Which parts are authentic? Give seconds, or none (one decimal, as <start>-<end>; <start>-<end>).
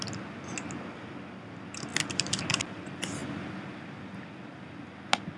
0.0-1.9; 2.6-5.4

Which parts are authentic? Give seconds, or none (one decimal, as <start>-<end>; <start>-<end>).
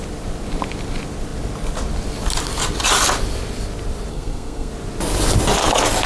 0.0-4.1; 4.7-6.1